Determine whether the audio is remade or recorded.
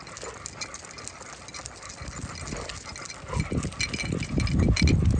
recorded